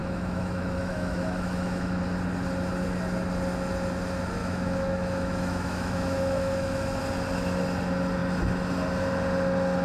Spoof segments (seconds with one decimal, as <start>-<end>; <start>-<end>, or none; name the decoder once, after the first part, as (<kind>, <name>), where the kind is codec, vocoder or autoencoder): 0.0-2.0 (autoencoder, DAC-VAE); 4.4-7.0